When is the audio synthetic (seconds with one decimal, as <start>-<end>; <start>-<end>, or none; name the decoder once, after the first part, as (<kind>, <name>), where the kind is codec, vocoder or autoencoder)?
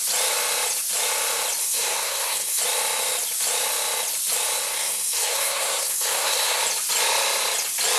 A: 1.6-2.6 (codec, SNAC); 4.7-6.6